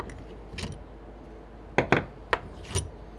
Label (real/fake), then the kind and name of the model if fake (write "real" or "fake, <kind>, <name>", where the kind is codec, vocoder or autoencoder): real